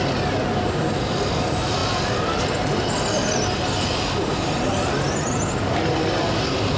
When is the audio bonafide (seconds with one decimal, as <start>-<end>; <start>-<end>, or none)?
0.0-6.8

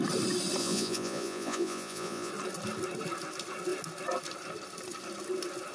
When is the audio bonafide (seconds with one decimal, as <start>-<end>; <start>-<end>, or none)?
0.0-0.6; 2.3-5.7

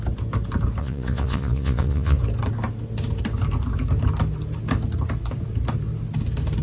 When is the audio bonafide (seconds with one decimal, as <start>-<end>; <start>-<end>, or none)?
0.0-0.8; 2.2-6.6

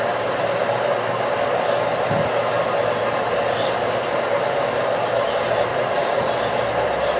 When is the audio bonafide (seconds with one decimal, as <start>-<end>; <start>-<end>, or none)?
0.0-5.7; 6.2-7.2

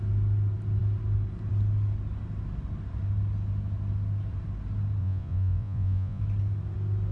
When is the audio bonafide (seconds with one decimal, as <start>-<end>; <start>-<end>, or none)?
0.0-5.0; 6.2-7.1

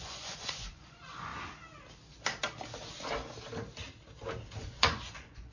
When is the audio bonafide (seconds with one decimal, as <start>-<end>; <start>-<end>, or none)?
1.3-4.6

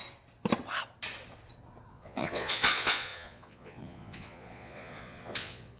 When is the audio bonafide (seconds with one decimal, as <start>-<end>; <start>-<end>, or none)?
0.0-1.9